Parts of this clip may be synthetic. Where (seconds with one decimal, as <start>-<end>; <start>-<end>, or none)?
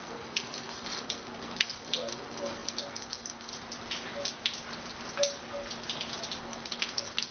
0.0-3.5; 6.4-7.3